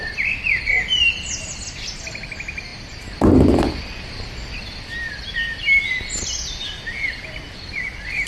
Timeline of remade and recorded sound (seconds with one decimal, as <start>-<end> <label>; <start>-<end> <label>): 0.0-8.3 recorded